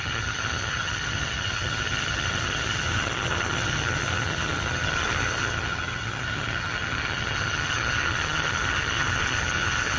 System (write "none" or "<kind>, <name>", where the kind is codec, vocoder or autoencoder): vocoder, HiFi-GAN